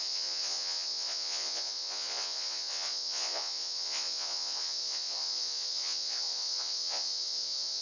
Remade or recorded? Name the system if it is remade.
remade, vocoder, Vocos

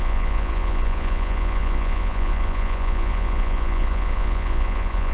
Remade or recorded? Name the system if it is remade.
remade, vocoder, Vocos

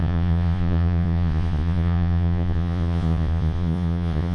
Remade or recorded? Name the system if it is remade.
remade, vocoder, Vocos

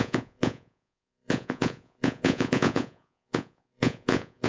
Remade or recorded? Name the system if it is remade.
remade, vocoder, Vocos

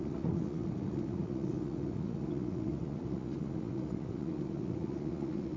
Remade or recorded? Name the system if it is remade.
remade, vocoder, Vocos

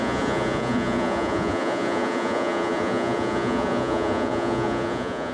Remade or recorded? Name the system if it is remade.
remade, vocoder, Vocos